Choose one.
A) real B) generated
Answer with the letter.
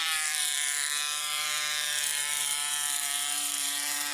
B